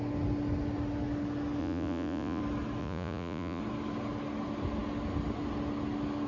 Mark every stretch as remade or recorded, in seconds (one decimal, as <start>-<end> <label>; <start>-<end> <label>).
0.0-1.6 recorded; 1.6-2.4 remade; 2.4-2.8 recorded; 2.8-3.6 remade; 3.6-6.3 recorded

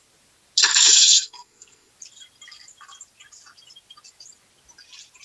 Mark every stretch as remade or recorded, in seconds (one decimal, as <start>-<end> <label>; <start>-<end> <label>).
0.0-0.7 recorded; 0.7-1.9 remade; 1.9-5.2 recorded

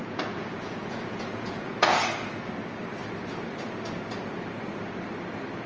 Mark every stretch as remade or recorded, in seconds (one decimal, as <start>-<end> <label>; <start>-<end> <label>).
0.0-2.0 remade; 2.0-5.7 recorded

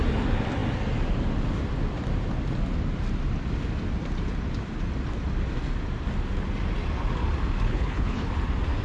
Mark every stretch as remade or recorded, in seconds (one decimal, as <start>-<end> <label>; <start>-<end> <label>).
0.0-7.7 recorded; 7.7-8.3 remade; 8.3-8.8 recorded

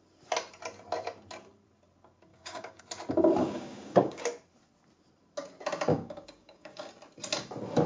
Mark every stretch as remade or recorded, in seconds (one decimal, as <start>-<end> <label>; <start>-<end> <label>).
0.0-2.3 recorded; 2.3-2.8 remade; 2.8-3.4 recorded; 3.4-4.2 remade; 4.2-5.9 recorded; 5.9-6.9 remade; 6.9-7.9 recorded